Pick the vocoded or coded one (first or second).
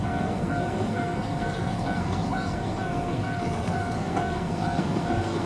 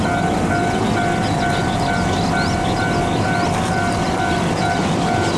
first